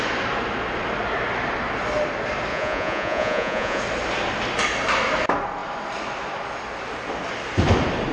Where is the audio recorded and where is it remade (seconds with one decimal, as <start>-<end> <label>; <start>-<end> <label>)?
0.0-2.5 recorded; 2.5-3.8 remade; 3.8-8.1 recorded